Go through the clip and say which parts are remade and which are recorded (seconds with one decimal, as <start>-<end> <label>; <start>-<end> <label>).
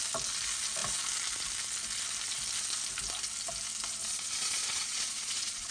0.0-4.0 recorded; 4.0-5.7 remade